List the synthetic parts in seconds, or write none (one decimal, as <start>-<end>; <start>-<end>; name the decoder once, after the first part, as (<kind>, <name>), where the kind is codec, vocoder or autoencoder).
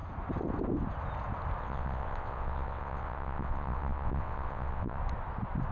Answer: 1.6-5.0 (vocoder, WaveNeXt)